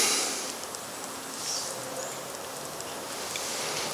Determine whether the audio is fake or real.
real